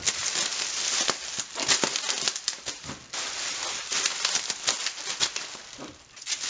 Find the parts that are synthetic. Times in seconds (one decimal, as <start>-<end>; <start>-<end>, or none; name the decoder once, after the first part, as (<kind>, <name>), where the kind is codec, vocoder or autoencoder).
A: none